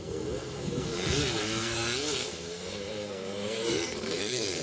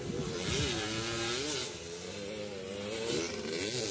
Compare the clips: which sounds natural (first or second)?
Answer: second